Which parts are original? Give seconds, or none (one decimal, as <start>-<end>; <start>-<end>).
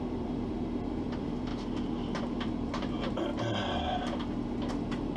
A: 1.5-2.2; 3.3-4.7